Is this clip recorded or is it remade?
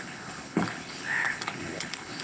remade